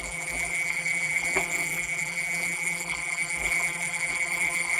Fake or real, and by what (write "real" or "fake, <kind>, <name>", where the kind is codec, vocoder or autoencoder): fake, vocoder, BigVGAN v2